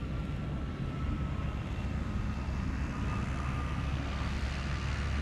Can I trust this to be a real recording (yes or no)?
yes